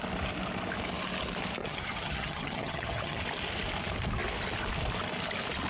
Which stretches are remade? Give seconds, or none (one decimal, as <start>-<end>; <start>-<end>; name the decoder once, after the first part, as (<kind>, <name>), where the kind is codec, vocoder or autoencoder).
1.6-3.2 (vocoder, HiFi-GAN)